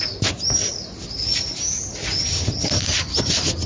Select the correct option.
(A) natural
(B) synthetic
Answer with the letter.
A